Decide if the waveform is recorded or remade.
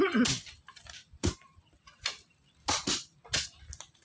recorded